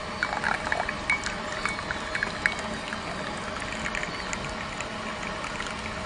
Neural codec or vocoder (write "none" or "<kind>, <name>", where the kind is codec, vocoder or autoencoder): none